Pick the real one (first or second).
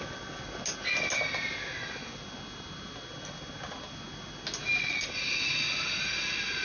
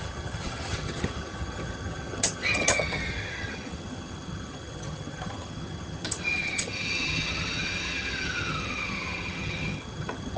first